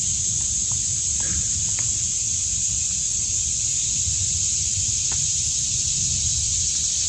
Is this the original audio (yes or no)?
yes